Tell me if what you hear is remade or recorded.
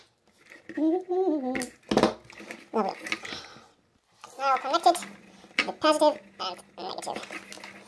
recorded